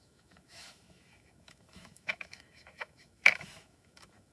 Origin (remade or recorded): remade